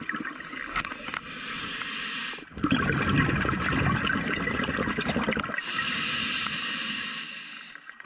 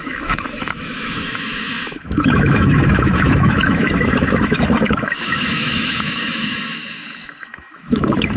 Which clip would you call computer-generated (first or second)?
second